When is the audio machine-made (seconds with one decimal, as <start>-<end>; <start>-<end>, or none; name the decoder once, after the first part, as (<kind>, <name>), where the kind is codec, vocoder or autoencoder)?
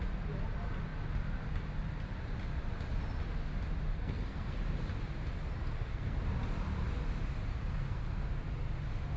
3.9-4.6 (codec, SNAC); 5.6-6.2; 7.5-8.3